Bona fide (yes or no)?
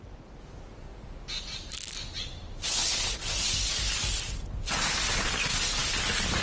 yes